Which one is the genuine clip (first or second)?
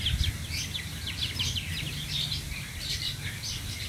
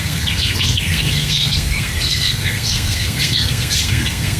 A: first